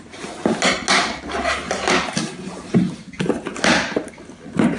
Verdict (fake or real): real